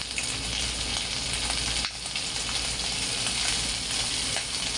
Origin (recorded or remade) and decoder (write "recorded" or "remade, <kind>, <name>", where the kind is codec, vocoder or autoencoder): recorded